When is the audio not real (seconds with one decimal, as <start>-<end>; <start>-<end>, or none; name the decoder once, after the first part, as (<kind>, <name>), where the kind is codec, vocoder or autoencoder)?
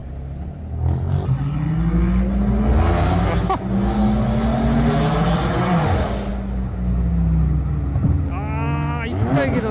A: none